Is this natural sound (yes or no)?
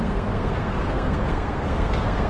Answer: no